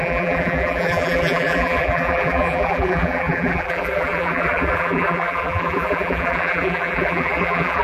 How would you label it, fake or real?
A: fake